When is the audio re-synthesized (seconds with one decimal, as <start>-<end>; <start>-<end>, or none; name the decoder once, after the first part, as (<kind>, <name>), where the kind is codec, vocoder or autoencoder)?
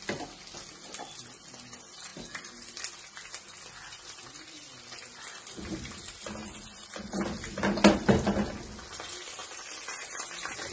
none